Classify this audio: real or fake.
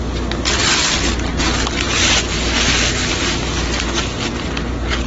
real